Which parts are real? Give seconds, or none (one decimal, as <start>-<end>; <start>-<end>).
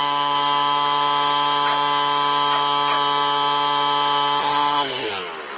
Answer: 0.0-4.4; 5.1-5.6